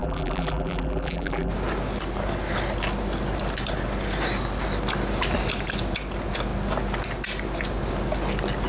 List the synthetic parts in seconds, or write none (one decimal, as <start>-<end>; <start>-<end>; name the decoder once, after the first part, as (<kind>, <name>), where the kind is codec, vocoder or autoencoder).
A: 0.0-1.5 (vocoder, BigVGAN v2)